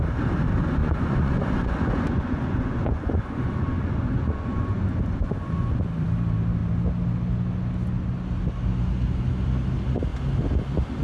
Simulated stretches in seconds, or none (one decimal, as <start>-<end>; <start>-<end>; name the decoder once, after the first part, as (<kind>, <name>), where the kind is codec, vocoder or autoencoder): 0.8-5.8 (vocoder, Vocos)